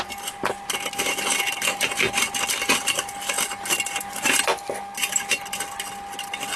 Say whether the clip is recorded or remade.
recorded